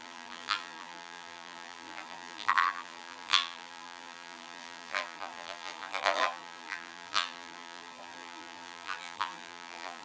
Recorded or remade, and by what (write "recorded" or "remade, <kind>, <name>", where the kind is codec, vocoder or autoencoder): remade, vocoder, BigVGAN v2